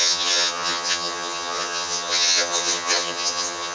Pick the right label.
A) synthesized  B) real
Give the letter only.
A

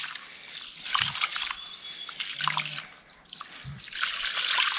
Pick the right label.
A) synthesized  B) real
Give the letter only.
B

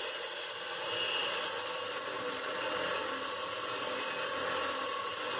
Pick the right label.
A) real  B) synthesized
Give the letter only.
A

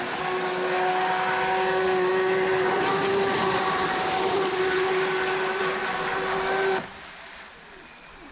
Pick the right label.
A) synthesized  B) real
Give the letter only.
B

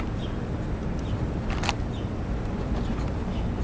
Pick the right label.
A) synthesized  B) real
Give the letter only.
B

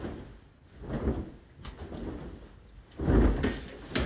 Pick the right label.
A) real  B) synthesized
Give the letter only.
A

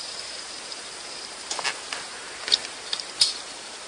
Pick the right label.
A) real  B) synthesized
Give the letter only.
B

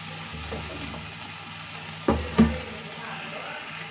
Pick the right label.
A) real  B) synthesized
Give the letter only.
A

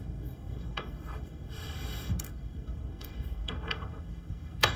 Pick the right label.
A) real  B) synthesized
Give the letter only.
B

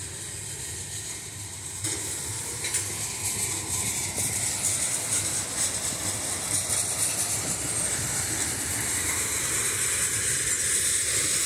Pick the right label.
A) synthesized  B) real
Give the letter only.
B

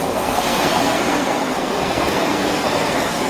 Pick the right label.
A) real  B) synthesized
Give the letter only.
B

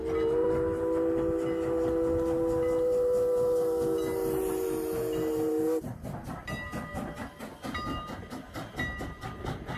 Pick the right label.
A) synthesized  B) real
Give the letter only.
B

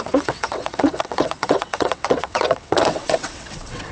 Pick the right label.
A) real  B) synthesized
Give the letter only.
B